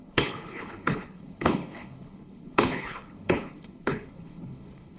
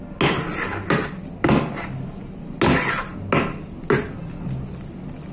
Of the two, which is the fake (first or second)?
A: first